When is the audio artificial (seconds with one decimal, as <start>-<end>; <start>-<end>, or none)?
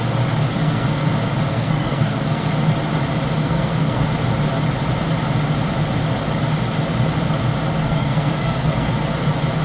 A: 0.6-1.1; 1.5-2.5; 3.4-4.1; 7.8-8.9